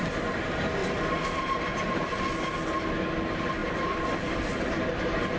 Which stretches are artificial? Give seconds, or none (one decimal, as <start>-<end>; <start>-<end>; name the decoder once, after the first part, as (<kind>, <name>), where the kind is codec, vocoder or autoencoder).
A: 0.8-2.2 (vocoder, BigVGAN v2); 3.6-4.3

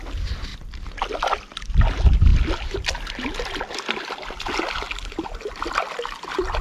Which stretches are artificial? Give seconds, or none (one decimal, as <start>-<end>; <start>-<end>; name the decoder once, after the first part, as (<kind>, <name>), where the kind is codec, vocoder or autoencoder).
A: none

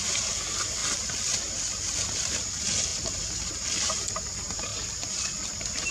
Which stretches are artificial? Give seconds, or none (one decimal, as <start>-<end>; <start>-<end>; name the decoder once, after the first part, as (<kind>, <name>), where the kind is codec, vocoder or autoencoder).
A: 0.8-2.4 (vocoder, BigVGAN v2)

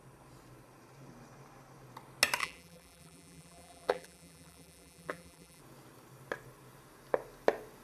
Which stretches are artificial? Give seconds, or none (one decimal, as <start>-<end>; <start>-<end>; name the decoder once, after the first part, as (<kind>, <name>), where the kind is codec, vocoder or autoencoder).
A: 2.4-5.6 (vocoder, BigVGAN v2)